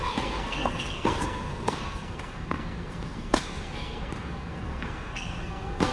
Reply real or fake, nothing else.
fake